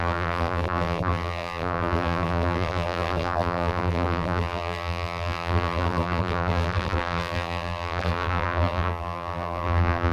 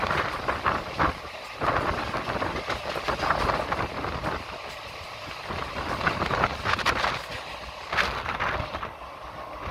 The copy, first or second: first